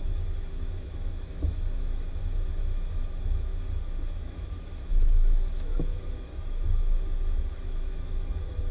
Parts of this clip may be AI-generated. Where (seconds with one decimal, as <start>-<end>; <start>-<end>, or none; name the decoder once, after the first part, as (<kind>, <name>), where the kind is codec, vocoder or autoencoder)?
0.0-3.5 (autoencoder, DAC-VAE); 4.2-8.7